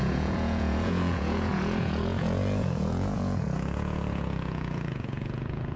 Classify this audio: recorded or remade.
remade